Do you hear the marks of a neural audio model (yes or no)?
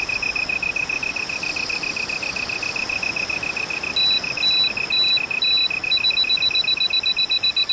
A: no